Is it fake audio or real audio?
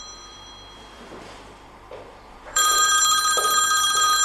fake